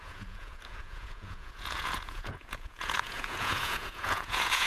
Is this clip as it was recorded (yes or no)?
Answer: no